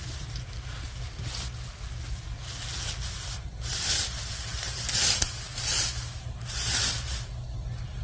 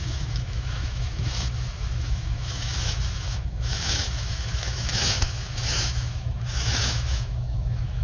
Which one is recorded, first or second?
first